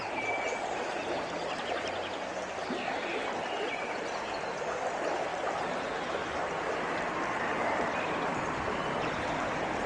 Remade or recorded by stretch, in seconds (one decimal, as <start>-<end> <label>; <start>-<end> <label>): 0.0-9.9 recorded